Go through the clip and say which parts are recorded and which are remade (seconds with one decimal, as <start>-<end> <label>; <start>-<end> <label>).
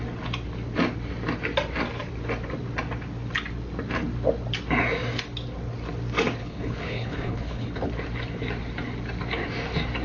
0.0-6.4 recorded; 6.4-7.9 remade; 7.9-10.0 recorded